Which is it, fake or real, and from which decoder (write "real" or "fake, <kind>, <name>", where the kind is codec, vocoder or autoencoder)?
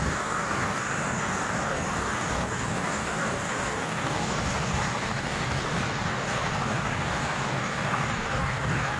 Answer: fake, codec, DAC